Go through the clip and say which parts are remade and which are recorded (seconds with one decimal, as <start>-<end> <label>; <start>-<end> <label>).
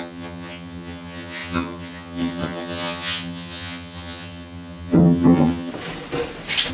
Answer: 0.0-5.7 remade; 5.7-6.7 recorded